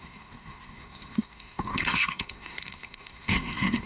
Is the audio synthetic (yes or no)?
yes